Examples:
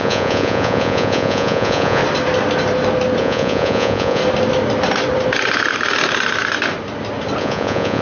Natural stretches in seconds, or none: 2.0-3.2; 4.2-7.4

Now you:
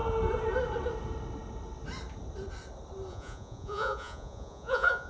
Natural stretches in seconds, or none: 0.0-3.1

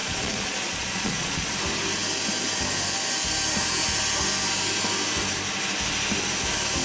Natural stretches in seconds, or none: 1.5-6.8

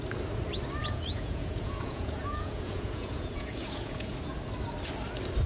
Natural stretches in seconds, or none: 0.0-0.8; 4.1-5.5

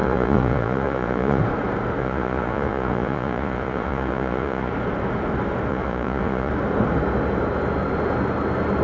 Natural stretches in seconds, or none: 1.4-2.0; 4.7-5.7; 6.5-8.8